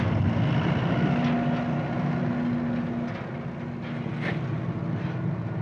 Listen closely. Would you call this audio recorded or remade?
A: recorded